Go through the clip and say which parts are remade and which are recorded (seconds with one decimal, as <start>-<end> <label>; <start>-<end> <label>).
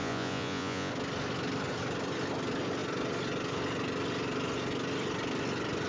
0.0-0.9 remade; 0.9-5.9 recorded